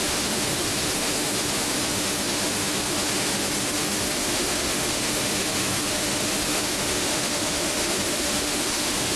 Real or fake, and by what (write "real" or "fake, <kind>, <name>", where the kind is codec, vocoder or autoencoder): fake, autoencoder, DAC-VAE